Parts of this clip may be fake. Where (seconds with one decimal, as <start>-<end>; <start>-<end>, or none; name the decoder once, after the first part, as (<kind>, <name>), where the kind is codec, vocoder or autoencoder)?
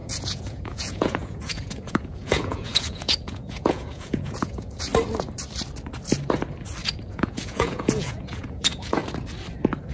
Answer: 0.0-4.9 (vocoder, Vocos); 7.1-9.0